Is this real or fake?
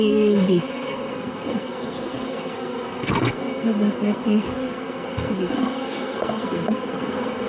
fake